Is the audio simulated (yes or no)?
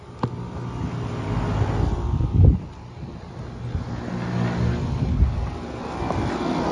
no